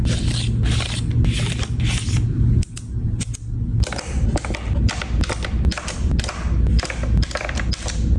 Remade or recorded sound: recorded